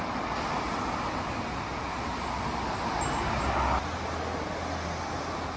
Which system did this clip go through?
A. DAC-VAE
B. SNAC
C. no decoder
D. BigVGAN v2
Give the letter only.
C